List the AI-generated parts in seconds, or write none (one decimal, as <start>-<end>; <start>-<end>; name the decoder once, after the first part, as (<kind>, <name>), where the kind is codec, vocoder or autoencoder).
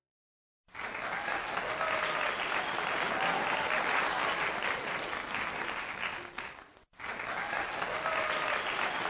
none